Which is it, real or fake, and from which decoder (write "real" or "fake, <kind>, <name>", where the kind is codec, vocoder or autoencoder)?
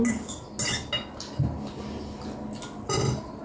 real